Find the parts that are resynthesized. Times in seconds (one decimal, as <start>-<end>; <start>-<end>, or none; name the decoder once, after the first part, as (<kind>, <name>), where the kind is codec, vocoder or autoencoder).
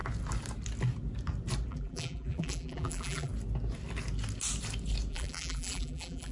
1.7-3.3 (vocoder, BigVGAN v2); 5.1-6.3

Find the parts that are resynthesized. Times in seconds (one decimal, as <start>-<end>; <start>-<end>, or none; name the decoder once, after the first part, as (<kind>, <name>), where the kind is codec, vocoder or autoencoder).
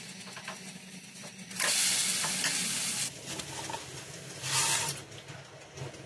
none